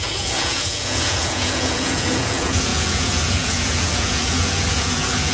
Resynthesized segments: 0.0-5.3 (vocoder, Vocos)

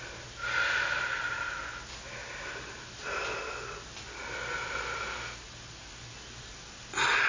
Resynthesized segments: none

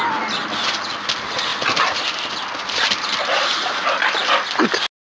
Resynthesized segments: none